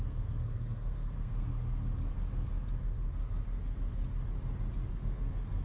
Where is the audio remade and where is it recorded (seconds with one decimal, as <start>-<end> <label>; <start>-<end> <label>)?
0.0-1.5 remade; 1.5-4.9 recorded; 4.9-5.6 remade